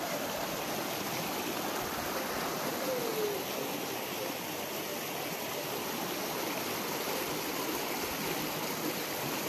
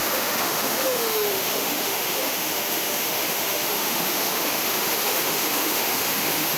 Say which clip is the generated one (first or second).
second